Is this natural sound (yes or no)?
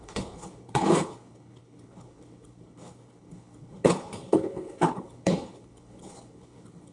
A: no